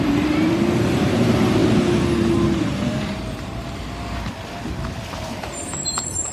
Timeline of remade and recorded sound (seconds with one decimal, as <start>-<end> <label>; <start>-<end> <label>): 0.0-1.6 remade; 1.6-5.4 recorded; 5.4-6.3 remade